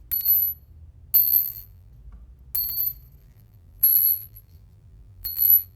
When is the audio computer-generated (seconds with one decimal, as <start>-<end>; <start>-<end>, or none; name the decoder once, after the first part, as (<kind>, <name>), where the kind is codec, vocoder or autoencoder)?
1.2-1.9 (vocoder, BigVGAN v2); 3.2-5.8